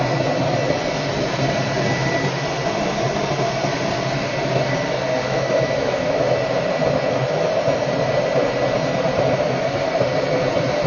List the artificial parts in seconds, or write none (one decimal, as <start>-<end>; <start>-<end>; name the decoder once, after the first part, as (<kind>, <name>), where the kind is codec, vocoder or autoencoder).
5.2-6.3 (autoencoder, DAC-VAE)

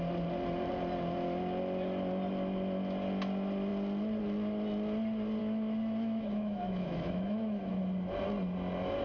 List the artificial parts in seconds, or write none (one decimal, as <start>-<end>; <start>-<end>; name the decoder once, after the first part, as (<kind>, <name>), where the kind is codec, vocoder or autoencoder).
5.4-7.8 (autoencoder, DAC-VAE)

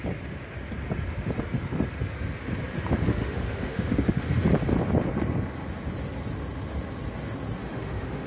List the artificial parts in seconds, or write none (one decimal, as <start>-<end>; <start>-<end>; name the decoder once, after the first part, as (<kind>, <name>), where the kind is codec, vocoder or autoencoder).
3.1-4.2 (autoencoder, DAC-VAE); 7.6-8.3

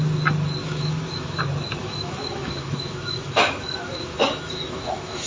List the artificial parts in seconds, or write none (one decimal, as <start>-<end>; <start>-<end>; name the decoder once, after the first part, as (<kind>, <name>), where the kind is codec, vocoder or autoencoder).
0.6-1.4 (autoencoder, DAC-VAE); 1.8-5.3

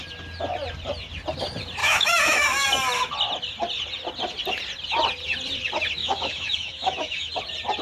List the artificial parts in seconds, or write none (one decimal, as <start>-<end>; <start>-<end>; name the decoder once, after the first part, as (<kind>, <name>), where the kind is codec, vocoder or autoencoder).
1.8-2.7 (autoencoder, DAC-VAE); 6.0-7.3

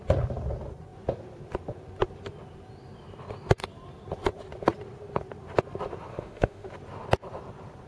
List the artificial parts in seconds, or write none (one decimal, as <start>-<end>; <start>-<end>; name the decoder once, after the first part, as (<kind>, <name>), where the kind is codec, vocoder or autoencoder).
6.1-6.7 (autoencoder, DAC-VAE)

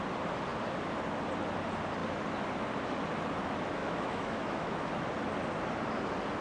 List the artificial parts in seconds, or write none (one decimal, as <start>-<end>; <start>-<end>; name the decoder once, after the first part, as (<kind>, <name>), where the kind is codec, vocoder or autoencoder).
3.8-4.9 (autoencoder, DAC-VAE)

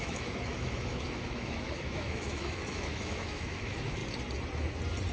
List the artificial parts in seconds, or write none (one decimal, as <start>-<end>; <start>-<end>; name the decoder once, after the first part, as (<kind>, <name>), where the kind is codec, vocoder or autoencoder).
0.0-4.0 (autoencoder, DAC-VAE)